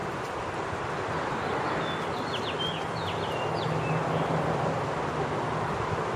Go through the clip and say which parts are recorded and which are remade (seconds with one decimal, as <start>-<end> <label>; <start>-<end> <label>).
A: 0.0-6.2 recorded